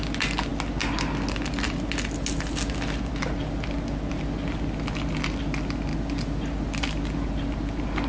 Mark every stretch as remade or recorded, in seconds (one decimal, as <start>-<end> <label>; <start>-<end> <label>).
0.0-8.1 recorded